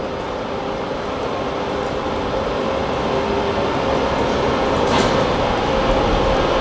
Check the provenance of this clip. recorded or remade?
recorded